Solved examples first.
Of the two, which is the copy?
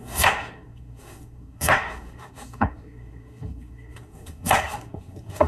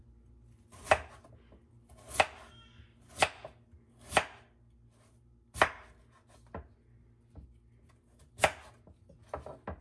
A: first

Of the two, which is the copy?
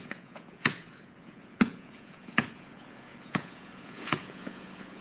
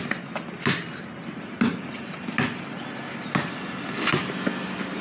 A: first